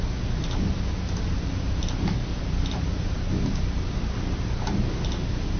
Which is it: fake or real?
real